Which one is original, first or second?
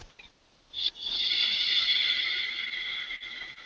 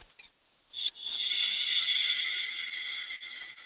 second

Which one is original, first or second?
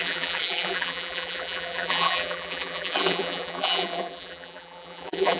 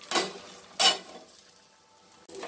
second